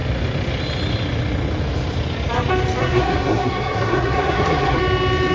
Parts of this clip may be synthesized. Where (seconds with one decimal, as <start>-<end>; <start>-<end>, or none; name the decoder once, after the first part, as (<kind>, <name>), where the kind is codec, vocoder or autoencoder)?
2.8-4.8 (codec, SNAC)